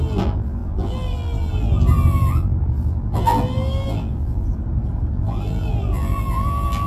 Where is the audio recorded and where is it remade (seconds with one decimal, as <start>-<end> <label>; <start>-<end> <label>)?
0.0-4.6 remade; 4.6-5.1 recorded; 5.1-6.9 remade